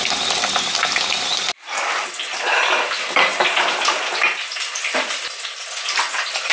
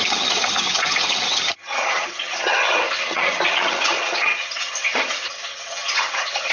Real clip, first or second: first